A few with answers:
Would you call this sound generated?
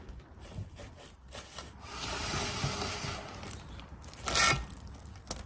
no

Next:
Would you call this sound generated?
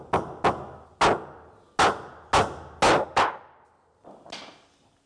no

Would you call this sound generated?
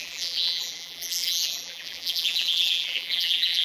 yes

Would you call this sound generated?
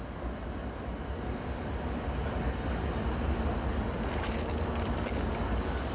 no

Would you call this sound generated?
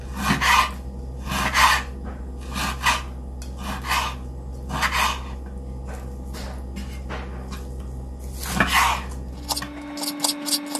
no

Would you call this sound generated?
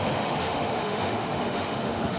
yes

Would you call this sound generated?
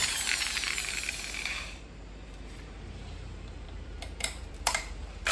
yes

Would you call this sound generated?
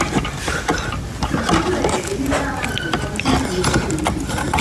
no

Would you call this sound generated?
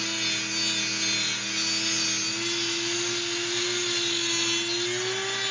no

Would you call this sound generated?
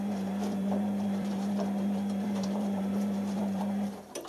yes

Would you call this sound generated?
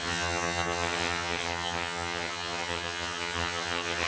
yes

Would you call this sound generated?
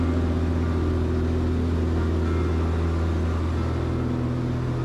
no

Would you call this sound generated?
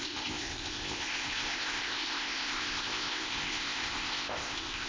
yes